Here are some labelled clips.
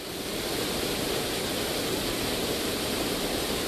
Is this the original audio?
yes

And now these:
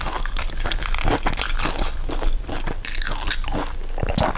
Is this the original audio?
yes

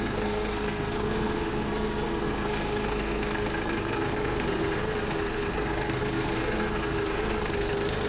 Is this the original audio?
no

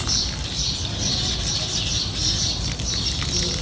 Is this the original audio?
yes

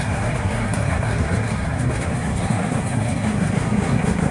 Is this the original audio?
no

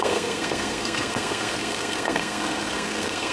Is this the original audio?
no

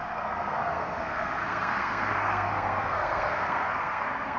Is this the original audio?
no